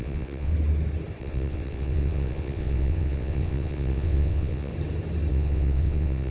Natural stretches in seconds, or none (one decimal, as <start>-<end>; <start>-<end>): 0.5-1.2; 4.7-5.3